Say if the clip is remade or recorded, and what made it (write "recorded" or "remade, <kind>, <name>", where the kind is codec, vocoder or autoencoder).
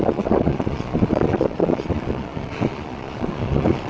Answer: remade, vocoder, Vocos